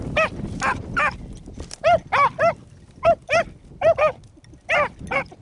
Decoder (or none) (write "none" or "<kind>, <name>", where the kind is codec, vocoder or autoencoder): none